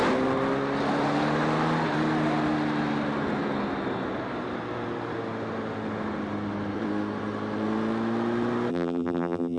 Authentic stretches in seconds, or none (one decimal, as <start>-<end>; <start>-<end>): 0.0-8.7